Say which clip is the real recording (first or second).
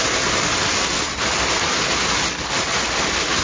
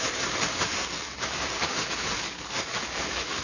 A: first